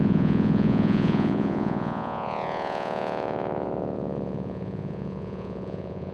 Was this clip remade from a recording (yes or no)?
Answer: yes